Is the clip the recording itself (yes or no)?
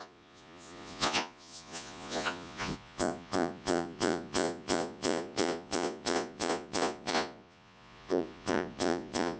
no